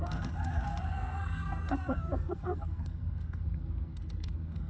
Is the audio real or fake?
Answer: fake